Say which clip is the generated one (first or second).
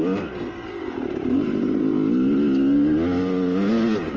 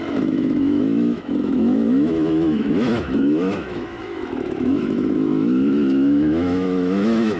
second